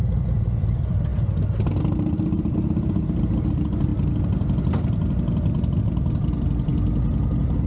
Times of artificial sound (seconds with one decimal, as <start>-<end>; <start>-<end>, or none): 0.0-1.1; 3.5-3.9; 5.8-7.7